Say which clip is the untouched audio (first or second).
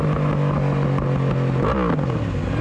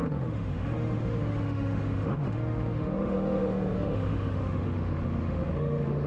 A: first